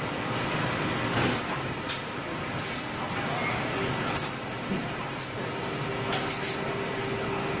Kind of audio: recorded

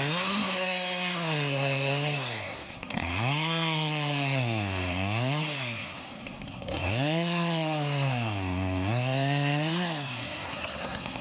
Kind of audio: remade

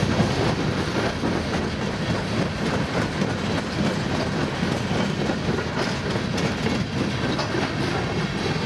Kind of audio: recorded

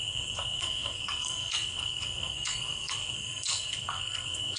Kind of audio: remade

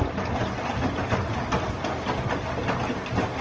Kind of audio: recorded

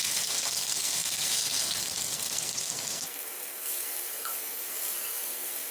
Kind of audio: remade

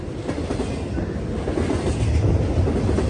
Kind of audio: recorded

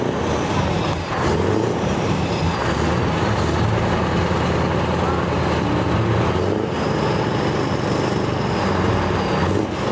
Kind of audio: recorded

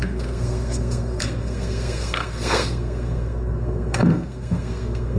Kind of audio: remade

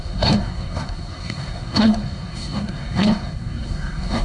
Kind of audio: remade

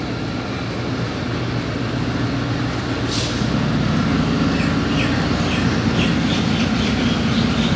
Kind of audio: recorded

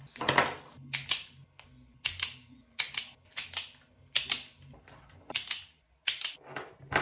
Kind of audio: recorded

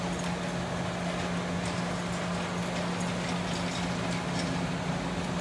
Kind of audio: recorded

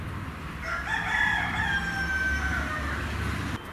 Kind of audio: recorded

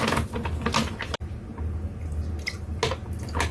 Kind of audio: recorded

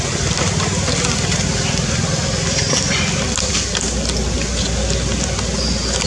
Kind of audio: recorded